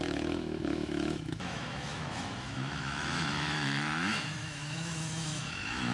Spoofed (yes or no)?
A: yes